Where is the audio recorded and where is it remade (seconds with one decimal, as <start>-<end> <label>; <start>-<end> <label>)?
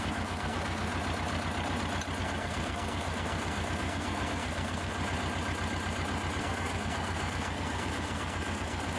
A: 0.0-0.9 remade; 0.9-2.2 recorded; 2.2-4.9 remade; 4.9-6.4 recorded; 6.4-9.0 remade